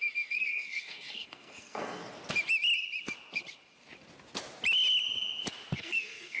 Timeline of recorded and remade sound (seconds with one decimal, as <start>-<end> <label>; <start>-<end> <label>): 0.0-2.0 remade; 2.0-5.8 recorded; 5.8-6.4 remade